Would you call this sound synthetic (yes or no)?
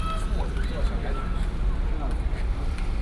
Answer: no